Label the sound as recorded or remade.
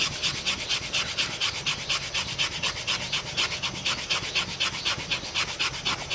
recorded